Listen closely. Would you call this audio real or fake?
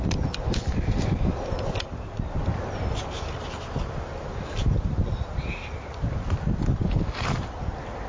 real